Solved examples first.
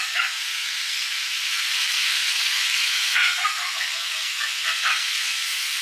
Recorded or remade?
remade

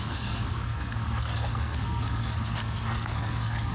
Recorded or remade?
remade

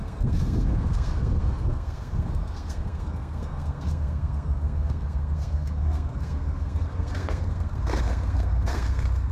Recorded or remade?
remade